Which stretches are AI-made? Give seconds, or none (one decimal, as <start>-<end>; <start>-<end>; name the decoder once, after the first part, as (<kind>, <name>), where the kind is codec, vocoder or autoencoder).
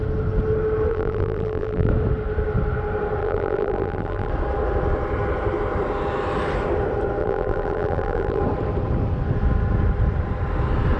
0.9-1.9 (vocoder, BigVGAN v2); 3.2-4.3; 7.2-8.4